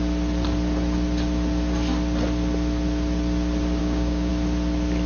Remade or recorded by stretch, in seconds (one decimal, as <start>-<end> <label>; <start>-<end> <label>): 0.0-3.8 recorded; 3.8-4.3 remade; 4.3-5.1 recorded